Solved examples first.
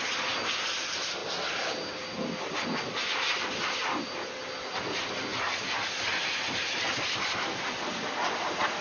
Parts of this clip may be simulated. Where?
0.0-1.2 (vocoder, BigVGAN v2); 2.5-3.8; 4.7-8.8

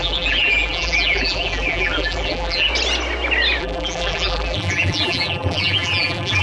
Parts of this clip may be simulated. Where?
0.0-2.7 (vocoder, BigVGAN v2); 3.6-6.4

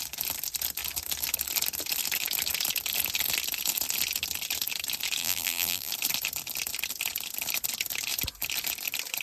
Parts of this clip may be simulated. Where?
5.2-5.9 (vocoder, BigVGAN v2)